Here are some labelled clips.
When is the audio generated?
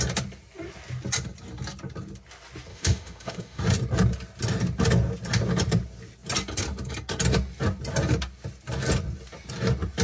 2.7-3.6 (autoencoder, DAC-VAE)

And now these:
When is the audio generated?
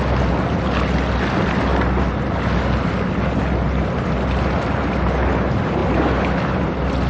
none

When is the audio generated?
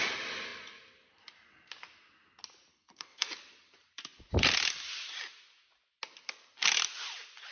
2.7-3.3 (codec, SNAC)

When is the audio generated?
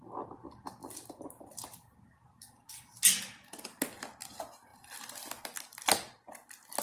none